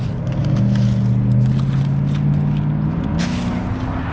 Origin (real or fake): real